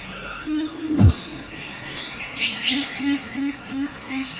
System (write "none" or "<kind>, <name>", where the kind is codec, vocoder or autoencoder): codec, SNAC